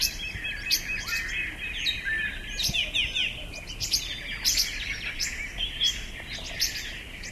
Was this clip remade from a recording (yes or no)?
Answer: no